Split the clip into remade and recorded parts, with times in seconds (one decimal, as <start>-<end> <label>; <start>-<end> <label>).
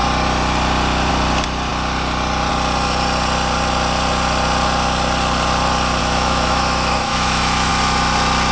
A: 0.0-6.0 recorded; 6.0-7.7 remade; 7.7-8.5 recorded